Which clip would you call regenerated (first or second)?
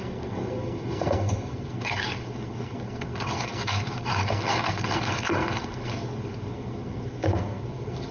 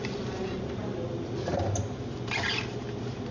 first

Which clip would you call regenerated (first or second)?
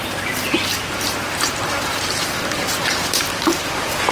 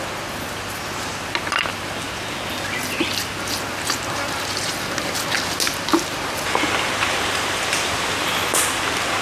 first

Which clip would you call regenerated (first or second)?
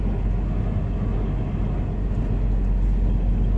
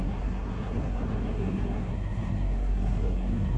second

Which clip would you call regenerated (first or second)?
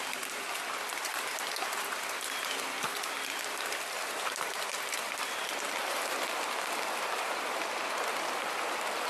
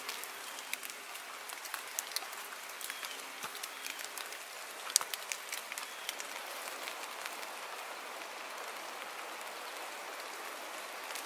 first